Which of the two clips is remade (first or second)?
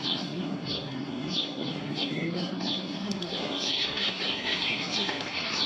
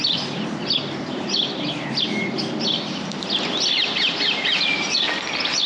first